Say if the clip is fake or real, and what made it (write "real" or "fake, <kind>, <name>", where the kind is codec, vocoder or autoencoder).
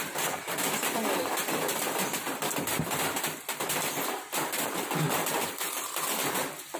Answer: fake, vocoder, BigVGAN v2